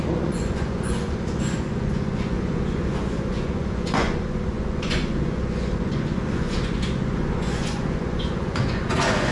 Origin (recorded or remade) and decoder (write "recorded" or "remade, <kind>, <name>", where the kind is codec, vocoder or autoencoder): remade, vocoder, Vocos